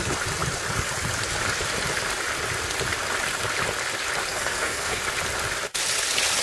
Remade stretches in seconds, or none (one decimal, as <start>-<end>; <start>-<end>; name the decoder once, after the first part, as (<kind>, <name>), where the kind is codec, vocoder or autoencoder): 4.3-5.0 (codec, SNAC)